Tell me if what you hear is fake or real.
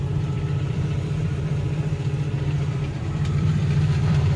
fake